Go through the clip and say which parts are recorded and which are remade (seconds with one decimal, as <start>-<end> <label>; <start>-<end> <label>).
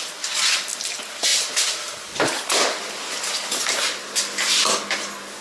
0.0-1.3 recorded; 1.3-4.0 remade; 4.0-5.4 recorded